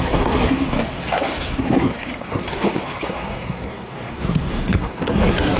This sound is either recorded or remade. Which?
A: remade